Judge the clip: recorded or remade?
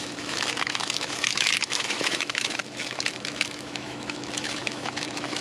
remade